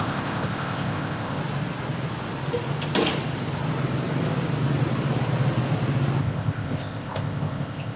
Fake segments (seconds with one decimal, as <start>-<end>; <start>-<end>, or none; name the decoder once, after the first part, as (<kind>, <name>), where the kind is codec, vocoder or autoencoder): 0.0-1.4 (codec, ZipCodec); 6.2-8.0